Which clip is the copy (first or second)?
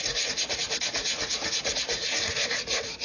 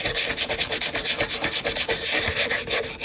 first